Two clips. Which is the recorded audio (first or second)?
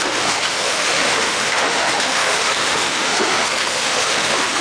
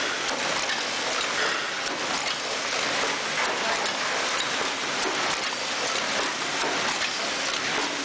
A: second